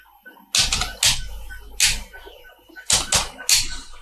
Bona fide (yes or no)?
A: yes